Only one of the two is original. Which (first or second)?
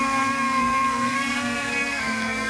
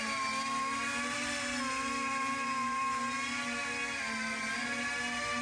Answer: second